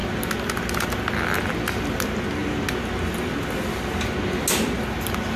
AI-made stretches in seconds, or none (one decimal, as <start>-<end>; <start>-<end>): none